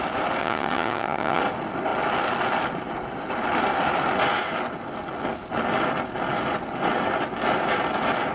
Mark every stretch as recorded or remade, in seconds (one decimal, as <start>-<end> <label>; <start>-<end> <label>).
0.0-0.4 recorded; 0.4-1.4 remade; 1.4-8.3 recorded